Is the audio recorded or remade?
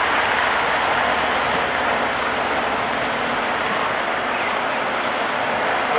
recorded